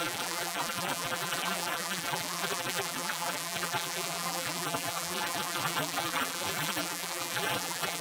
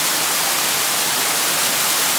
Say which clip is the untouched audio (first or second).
second